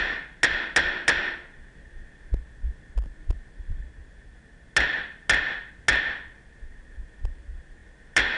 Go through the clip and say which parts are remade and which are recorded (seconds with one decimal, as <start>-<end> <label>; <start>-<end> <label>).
0.0-8.4 recorded